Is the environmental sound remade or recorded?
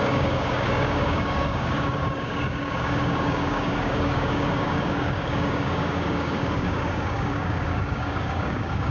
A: remade